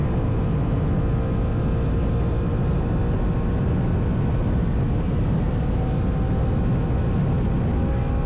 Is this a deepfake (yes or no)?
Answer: no